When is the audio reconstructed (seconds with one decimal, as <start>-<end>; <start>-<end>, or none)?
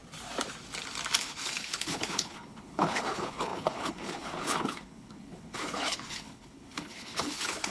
1.2-7.7